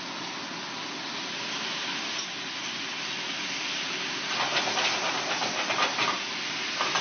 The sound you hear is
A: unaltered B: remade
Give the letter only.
A